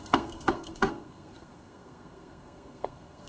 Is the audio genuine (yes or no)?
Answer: no